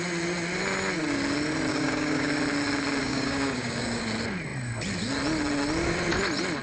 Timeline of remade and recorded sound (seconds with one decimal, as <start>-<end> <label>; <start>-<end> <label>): 0.0-1.7 recorded; 1.7-2.3 remade; 2.3-3.0 recorded; 3.0-4.0 remade; 4.0-6.6 recorded